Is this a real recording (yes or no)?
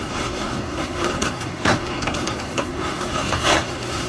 no